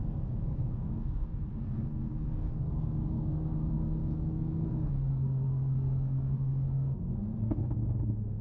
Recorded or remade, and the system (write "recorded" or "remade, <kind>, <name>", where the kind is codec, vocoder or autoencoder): remade, codec, SNAC